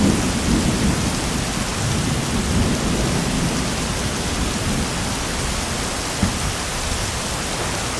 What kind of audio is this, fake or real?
real